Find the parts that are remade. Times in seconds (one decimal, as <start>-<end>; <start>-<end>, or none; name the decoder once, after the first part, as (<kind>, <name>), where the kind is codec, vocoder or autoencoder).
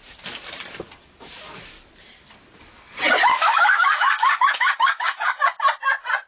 3.3-5.4 (codec, DAC)